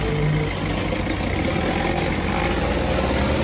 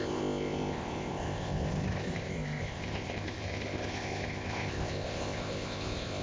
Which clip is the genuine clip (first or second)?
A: first